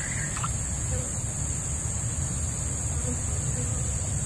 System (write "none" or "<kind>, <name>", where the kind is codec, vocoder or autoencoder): none